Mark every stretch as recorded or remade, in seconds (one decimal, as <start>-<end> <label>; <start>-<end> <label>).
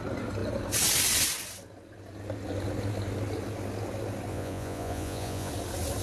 0.0-4.3 recorded; 4.3-5.5 remade; 5.5-6.0 recorded